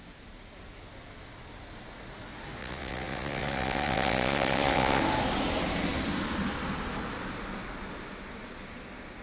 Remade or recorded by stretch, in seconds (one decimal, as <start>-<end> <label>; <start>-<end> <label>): 0.0-2.6 recorded; 2.6-5.0 remade; 5.0-9.2 recorded